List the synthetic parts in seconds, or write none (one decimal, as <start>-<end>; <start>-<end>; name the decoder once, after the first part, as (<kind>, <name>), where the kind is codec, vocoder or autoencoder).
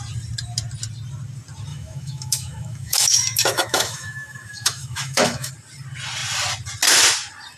1.7-5.5 (autoencoder, DAC-VAE)